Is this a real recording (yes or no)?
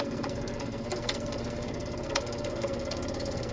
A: no